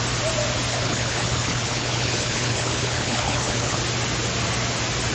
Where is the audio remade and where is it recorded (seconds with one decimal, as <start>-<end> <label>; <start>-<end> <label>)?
0.0-0.7 recorded; 0.7-3.8 remade; 3.8-5.1 recorded